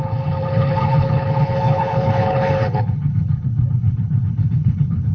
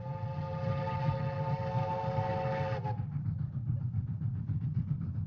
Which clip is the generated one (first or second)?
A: first